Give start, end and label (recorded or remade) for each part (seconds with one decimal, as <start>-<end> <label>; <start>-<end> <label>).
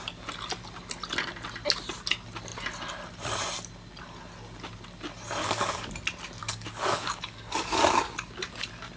0.0-5.4 recorded; 5.4-5.9 remade; 5.9-6.4 recorded; 6.4-8.0 remade; 8.0-9.0 recorded